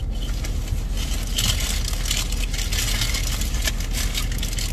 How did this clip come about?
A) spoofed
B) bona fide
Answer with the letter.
B